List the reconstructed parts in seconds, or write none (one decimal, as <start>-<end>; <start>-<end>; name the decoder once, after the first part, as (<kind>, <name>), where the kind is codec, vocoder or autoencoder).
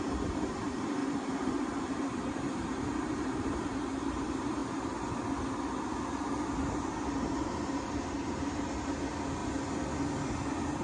0.0-1.0 (vocoder, BigVGAN v2); 1.8-4.6; 7.4-9.4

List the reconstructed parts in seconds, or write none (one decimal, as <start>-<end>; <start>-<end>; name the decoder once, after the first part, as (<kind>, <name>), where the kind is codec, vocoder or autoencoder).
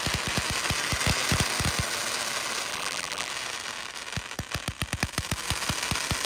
2.7-3.3 (vocoder, BigVGAN v2)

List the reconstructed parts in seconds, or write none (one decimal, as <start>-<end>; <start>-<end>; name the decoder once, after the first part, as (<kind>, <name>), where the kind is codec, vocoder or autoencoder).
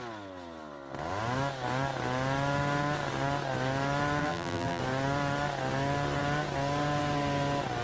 4.2-4.8 (vocoder, BigVGAN v2)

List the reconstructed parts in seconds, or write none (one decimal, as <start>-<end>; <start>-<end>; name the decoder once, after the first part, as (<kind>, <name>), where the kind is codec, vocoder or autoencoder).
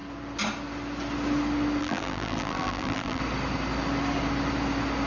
1.8-3.2 (vocoder, BigVGAN v2)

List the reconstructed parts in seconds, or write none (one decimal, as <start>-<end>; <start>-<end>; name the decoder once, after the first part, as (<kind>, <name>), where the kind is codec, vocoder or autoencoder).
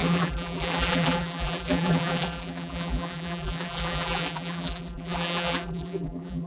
0.0-6.5 (vocoder, BigVGAN v2)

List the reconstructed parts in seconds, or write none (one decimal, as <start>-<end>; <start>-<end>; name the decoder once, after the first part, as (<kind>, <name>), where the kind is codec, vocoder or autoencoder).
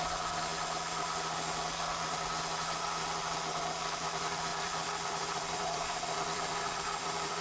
4.5-7.4 (vocoder, BigVGAN v2)